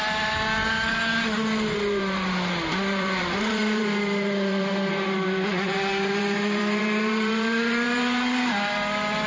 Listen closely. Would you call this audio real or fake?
fake